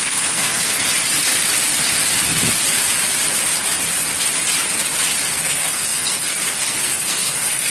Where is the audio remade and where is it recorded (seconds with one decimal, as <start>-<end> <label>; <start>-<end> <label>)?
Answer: 0.0-0.9 remade; 0.9-5.2 recorded; 5.2-7.7 remade